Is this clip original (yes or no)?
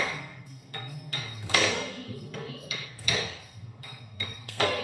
no